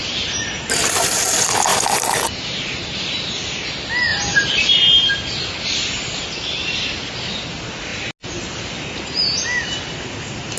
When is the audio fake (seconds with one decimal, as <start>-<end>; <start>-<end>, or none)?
1.7-3.1; 4.1-4.7